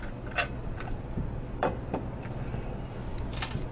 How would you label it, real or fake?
fake